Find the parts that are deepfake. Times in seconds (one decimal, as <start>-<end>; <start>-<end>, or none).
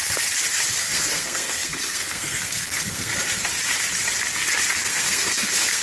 0.8-3.1; 4.8-5.8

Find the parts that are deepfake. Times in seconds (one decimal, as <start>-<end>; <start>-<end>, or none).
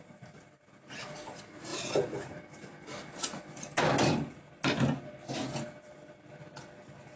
none